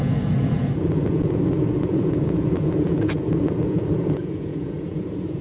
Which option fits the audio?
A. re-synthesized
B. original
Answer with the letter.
A